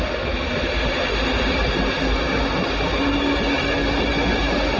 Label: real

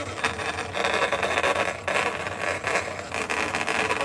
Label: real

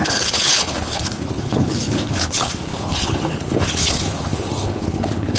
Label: fake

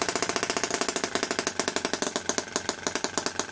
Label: real